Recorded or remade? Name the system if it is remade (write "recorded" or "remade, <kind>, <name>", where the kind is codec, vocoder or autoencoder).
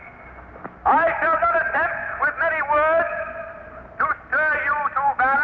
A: recorded